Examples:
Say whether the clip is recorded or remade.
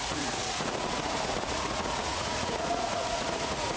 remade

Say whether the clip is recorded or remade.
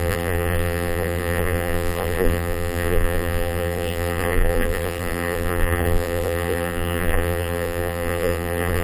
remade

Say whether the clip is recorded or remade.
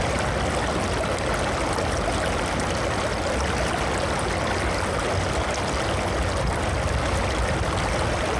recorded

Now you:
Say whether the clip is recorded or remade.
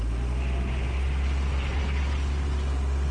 recorded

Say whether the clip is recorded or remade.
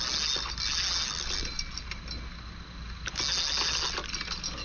recorded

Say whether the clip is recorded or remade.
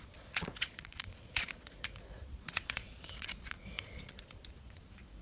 remade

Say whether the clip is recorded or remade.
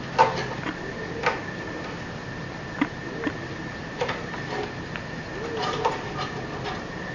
recorded